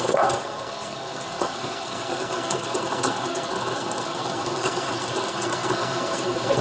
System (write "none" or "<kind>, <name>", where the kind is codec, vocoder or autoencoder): codec, SNAC